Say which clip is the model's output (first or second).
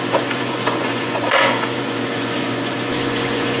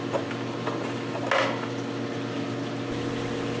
first